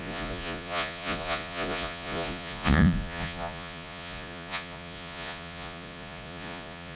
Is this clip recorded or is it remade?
remade